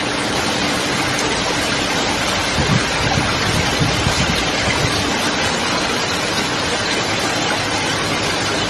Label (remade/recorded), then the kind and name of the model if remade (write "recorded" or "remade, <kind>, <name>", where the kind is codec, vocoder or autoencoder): recorded